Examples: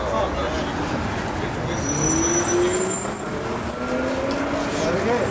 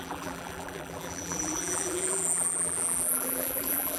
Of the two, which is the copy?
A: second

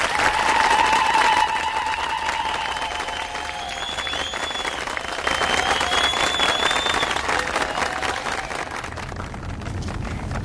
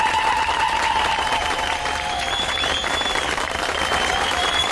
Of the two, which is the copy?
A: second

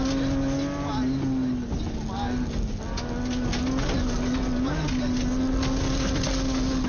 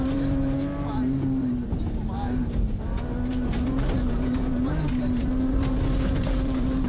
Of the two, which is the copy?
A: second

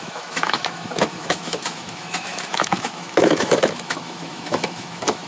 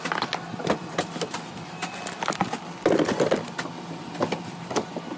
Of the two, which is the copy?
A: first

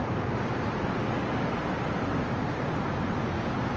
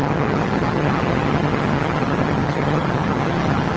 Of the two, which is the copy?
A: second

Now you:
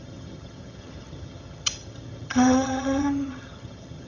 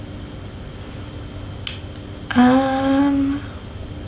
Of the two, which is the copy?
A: first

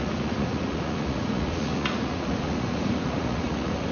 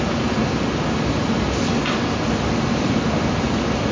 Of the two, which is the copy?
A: first